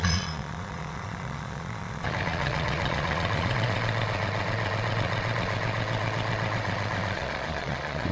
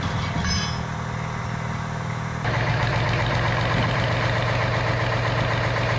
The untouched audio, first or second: second